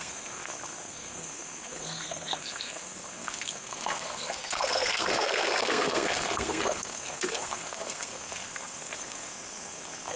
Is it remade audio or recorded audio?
remade